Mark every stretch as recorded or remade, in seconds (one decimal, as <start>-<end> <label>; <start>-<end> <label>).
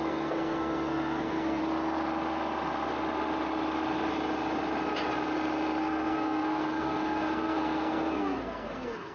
0.0-1.6 remade; 1.6-5.8 recorded; 5.8-9.1 remade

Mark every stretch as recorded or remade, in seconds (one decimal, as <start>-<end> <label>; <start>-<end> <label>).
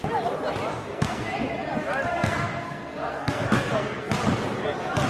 0.0-0.7 recorded; 0.7-1.3 remade; 1.3-2.1 recorded; 2.1-4.1 remade; 4.1-5.1 recorded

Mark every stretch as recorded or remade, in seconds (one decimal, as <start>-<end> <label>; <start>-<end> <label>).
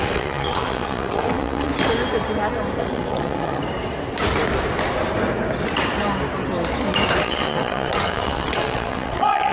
0.0-1.7 remade; 1.7-2.8 recorded; 2.8-3.6 remade; 3.6-7.2 recorded; 7.2-9.5 remade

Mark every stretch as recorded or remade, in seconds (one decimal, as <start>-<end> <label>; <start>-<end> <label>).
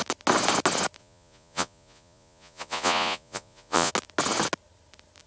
0.0-1.0 recorded; 1.0-3.9 remade; 3.9-5.3 recorded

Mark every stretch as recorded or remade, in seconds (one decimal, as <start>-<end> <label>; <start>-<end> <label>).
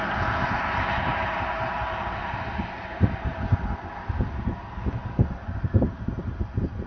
0.0-6.9 recorded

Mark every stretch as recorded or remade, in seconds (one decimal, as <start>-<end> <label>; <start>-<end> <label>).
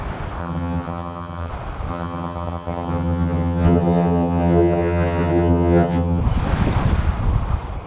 0.0-0.4 recorded; 0.4-1.5 remade; 1.5-1.9 recorded; 1.9-6.2 remade; 6.2-7.9 recorded